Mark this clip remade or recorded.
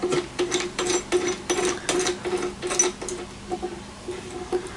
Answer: recorded